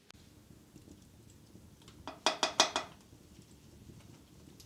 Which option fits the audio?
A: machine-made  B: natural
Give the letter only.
B